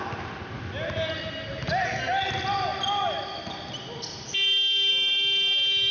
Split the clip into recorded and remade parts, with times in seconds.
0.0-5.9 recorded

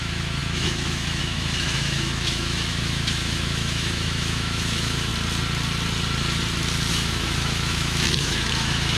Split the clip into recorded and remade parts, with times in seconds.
0.0-5.1 remade; 5.1-6.9 recorded; 6.9-9.0 remade

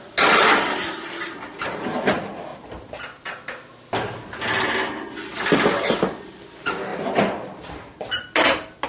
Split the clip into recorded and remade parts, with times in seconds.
0.0-8.9 recorded

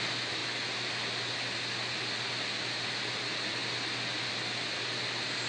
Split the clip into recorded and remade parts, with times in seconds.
0.0-5.5 recorded

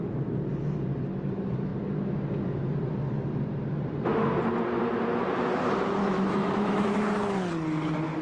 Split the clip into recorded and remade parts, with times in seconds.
0.0-6.0 recorded; 6.0-7.0 remade; 7.0-8.2 recorded

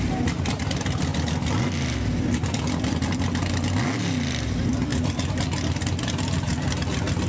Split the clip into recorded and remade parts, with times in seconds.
0.0-7.3 recorded

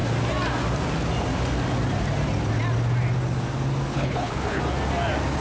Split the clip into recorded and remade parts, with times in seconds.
0.0-3.9 recorded; 3.9-4.6 remade; 4.6-5.4 recorded

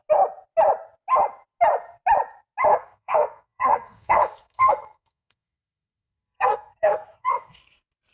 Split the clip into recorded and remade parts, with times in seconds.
0.0-2.7 recorded; 2.7-7.6 remade; 7.6-8.1 recorded